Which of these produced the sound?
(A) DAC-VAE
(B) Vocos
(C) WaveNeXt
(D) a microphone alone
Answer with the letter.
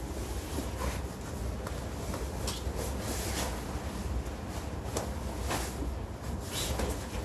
D